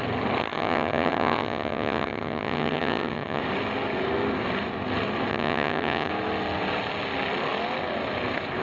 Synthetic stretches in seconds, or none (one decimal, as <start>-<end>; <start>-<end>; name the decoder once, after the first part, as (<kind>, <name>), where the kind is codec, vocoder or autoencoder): 0.4-3.4 (vocoder, HiFi-GAN); 5.3-6.1